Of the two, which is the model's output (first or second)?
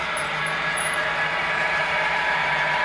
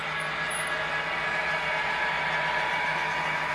first